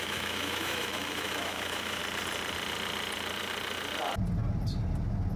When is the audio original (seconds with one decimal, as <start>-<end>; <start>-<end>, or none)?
2.0-5.4